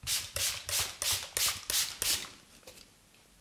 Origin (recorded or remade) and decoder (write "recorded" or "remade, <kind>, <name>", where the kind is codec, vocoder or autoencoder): recorded